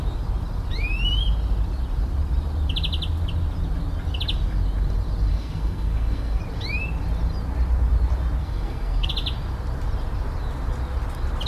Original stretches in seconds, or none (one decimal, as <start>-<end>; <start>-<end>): 0.0-5.3; 6.4-8.4; 9.1-11.5